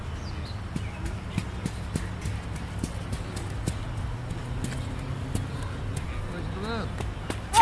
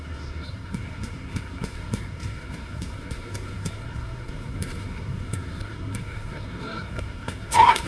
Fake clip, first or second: second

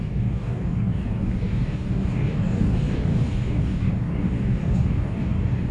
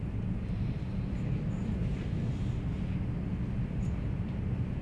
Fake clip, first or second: first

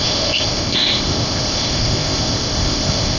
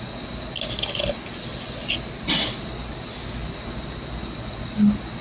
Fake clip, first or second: first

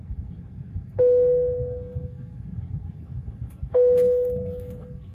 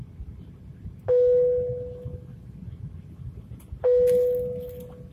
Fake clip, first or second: first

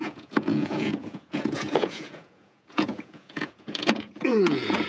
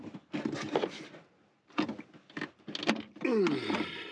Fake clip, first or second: first